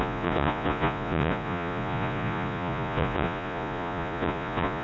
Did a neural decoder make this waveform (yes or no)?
yes